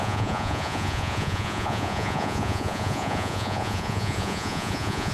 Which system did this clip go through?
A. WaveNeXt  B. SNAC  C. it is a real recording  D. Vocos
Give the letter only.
D